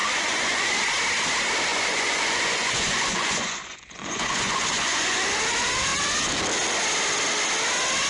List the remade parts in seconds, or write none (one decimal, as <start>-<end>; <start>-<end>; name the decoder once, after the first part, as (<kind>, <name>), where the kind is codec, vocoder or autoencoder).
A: 0.0-0.9 (vocoder, Vocos); 1.7-5.2